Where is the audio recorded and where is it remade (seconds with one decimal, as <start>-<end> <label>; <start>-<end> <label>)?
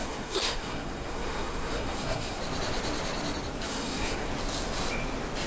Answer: 0.0-2.4 remade; 2.4-3.7 recorded; 3.7-4.3 remade; 4.3-5.5 recorded